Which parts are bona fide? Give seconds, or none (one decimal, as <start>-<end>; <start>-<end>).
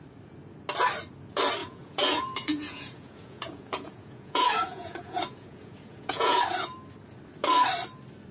0.0-1.6; 6.4-8.3